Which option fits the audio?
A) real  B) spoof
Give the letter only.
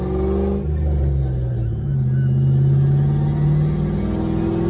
A